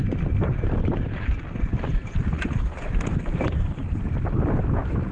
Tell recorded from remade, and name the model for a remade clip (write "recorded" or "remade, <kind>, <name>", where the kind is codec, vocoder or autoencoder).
recorded